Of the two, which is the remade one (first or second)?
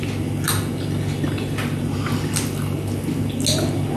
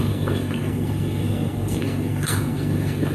second